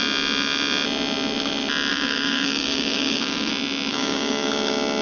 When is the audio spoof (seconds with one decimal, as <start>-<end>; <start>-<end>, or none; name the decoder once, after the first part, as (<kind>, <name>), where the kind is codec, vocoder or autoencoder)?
1.9-3.5 (codec, DAC); 3.9-4.5